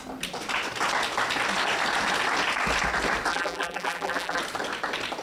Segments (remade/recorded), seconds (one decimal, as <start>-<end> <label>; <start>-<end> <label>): 0.0-3.3 recorded; 3.3-4.4 remade; 4.4-5.2 recorded